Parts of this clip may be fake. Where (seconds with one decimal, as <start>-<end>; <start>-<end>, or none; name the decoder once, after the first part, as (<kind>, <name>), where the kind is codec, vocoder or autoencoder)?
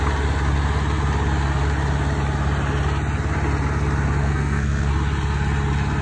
4.2-4.9 (codec, SNAC)